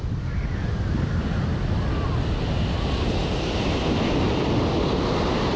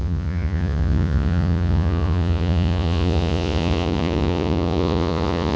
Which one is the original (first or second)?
first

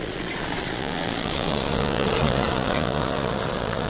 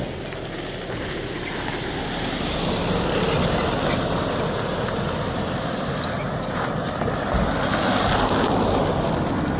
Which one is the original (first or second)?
second